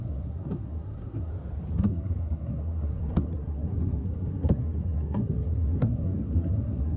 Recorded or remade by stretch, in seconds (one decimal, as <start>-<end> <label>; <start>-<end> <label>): 0.0-1.3 remade; 1.3-1.8 recorded; 1.8-7.0 remade